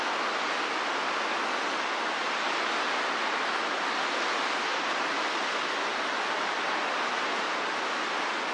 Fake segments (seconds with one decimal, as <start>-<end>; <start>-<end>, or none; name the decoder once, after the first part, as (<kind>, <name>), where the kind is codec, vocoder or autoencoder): none